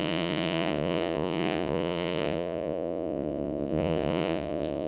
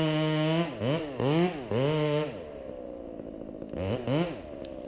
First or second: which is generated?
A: first